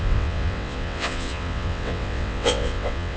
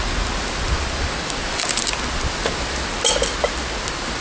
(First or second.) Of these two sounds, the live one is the second